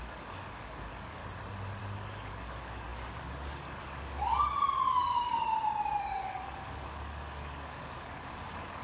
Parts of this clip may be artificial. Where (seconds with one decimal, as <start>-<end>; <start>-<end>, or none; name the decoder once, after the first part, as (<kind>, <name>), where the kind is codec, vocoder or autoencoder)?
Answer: 0.0-1.2 (codec, DAC); 1.8-4.3; 4.9-5.5; 6.0-8.8